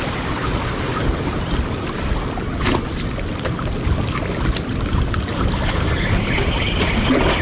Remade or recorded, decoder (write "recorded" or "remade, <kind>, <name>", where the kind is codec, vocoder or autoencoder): recorded